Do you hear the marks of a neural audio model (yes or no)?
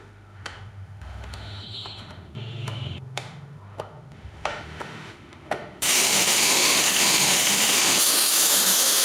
yes